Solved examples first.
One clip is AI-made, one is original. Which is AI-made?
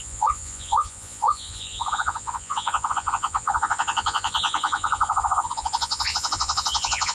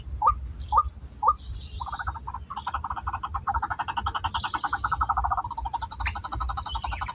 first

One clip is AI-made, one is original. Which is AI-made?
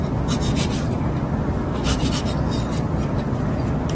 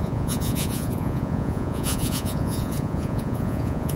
second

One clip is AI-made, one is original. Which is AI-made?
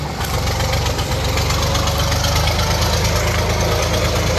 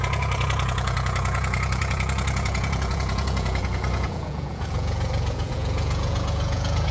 second